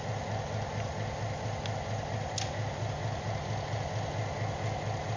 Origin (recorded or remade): recorded